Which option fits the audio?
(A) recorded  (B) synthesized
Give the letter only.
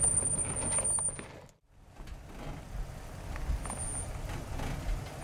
A